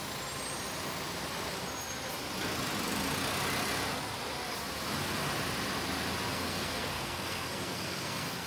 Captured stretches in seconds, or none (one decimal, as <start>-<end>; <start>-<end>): 0.0-6.3